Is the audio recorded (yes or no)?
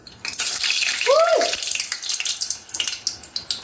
yes